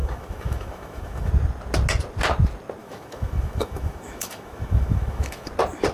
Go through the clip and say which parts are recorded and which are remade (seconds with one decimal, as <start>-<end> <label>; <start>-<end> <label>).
0.0-1.3 remade; 1.3-2.8 recorded; 2.8-5.5 remade; 5.5-5.9 recorded